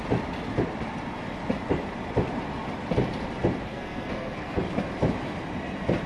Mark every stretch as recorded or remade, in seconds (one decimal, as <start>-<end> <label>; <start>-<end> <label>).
0.0-3.7 recorded; 3.7-4.6 remade; 4.6-6.1 recorded